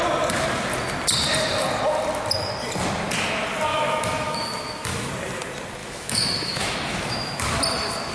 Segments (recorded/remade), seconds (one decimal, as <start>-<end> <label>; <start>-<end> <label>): 0.0-3.7 recorded; 3.7-5.1 remade; 5.1-5.8 recorded; 5.8-7.6 remade; 7.6-8.1 recorded